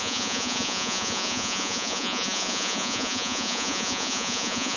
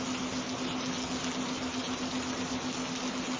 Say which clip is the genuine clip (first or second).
second